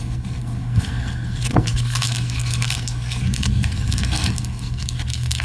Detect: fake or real fake